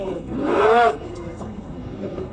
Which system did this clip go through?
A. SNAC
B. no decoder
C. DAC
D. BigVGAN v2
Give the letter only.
A